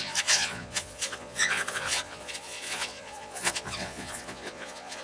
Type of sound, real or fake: fake